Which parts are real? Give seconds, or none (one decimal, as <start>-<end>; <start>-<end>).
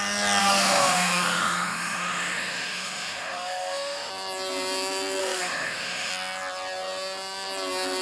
0.0-0.4; 4.1-5.2; 6.1-8.0